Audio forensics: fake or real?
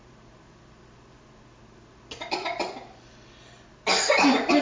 real